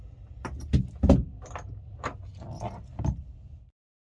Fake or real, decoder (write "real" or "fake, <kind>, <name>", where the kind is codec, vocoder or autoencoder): real